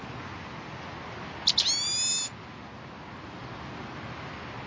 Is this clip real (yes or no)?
yes